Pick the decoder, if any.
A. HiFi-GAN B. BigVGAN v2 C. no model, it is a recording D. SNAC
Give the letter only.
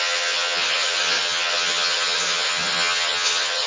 A